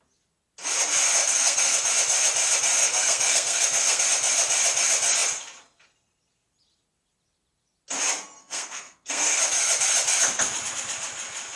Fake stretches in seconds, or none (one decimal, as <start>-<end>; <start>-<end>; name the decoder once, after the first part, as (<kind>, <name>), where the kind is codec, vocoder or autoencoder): 1.2-1.9 (codec, SNAC); 2.8-4.0; 8.4-9.4